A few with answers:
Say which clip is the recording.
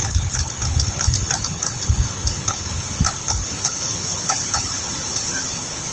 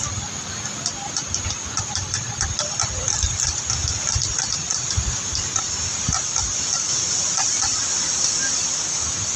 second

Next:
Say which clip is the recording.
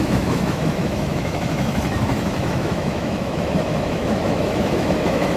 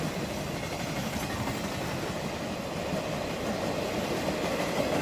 second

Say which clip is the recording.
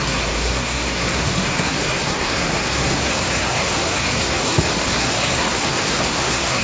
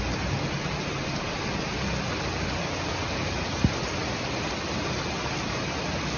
second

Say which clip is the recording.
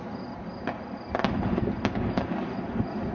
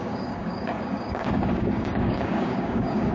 first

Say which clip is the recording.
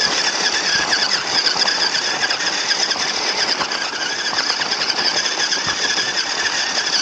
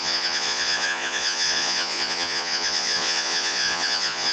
first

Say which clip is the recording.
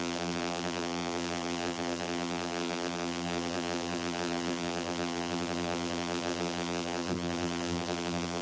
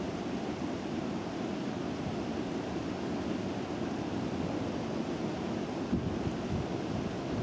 second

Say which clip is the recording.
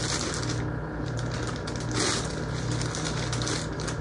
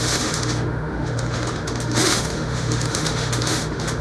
first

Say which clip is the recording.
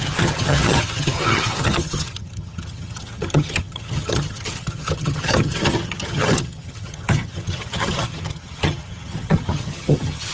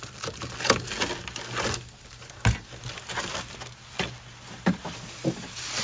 second